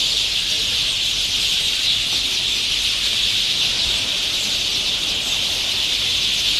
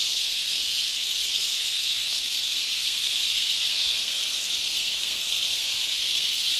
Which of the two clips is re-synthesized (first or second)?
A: second